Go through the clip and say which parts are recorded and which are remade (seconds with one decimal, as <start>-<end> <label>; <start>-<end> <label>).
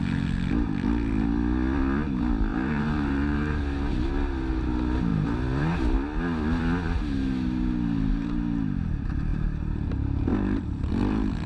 0.0-2.5 recorded; 2.5-3.6 remade; 3.6-10.3 recorded; 10.3-10.9 remade; 10.9-11.5 recorded